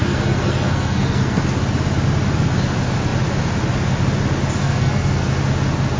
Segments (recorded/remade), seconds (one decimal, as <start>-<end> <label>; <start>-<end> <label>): 0.0-1.4 remade; 1.4-4.6 recorded; 4.6-5.3 remade; 5.3-6.0 recorded